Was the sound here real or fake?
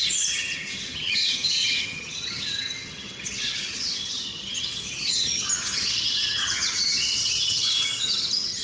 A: fake